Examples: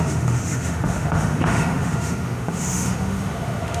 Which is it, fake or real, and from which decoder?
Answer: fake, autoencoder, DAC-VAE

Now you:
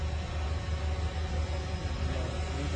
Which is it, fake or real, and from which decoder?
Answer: real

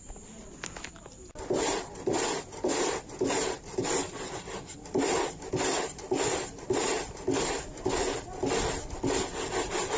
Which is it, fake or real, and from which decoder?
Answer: real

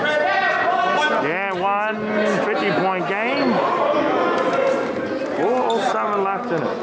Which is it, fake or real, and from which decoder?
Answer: real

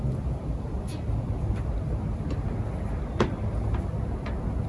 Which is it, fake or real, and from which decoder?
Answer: real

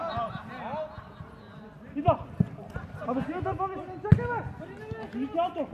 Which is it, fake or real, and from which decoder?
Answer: real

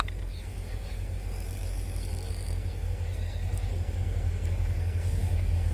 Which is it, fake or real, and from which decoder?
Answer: fake, codec, SNAC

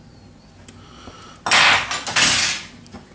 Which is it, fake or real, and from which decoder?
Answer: real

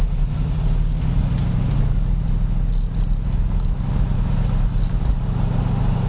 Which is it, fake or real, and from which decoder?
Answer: real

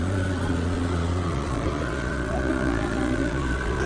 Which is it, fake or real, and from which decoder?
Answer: fake, vocoder, Vocos